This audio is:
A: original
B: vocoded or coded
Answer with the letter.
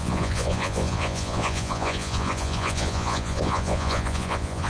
B